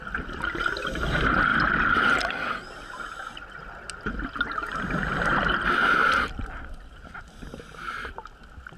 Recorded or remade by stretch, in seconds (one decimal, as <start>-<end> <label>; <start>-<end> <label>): 0.0-8.8 recorded